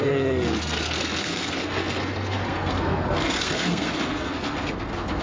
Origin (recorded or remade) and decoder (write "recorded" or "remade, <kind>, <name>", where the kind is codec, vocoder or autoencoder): remade, codec, SNAC